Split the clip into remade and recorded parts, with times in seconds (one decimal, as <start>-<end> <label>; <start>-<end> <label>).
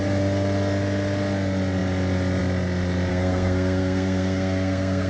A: 0.0-3.1 recorded; 3.1-5.1 remade